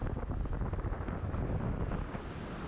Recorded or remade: recorded